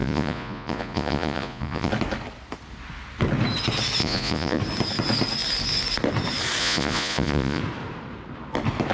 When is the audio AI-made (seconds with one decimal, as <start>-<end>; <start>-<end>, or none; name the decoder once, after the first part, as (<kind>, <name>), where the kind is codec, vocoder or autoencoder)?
0.0-1.9 (vocoder, Vocos); 4.0-4.6; 6.6-7.6